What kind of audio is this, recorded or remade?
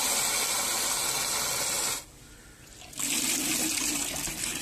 recorded